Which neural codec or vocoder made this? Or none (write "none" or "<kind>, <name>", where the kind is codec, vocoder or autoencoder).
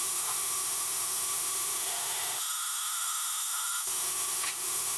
autoencoder, DAC-VAE